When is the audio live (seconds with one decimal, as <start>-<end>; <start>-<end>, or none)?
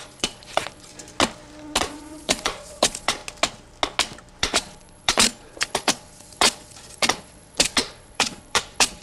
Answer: 0.9-1.8; 3.2-4.4